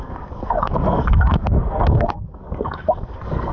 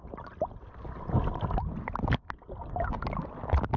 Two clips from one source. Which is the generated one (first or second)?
first